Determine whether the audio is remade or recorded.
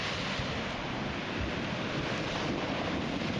recorded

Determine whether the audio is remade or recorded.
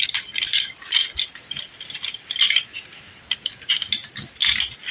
recorded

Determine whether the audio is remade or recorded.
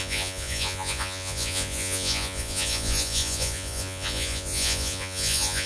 remade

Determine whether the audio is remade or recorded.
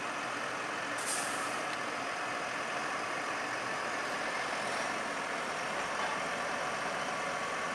recorded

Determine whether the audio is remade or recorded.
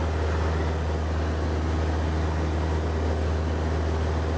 recorded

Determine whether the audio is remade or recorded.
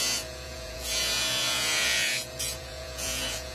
remade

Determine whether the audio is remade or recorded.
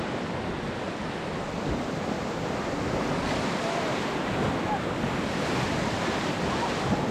recorded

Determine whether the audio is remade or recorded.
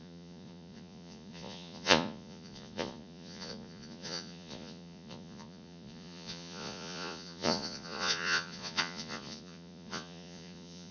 remade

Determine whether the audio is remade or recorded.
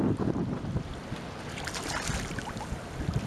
recorded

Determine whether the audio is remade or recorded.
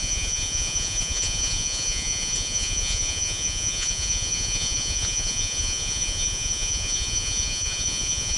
remade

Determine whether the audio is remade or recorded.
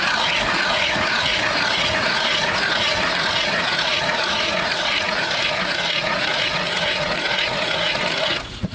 remade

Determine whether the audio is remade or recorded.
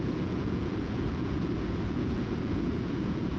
remade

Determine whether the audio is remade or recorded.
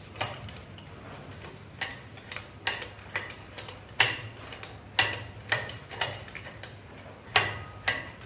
recorded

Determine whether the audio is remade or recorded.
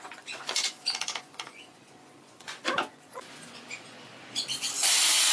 remade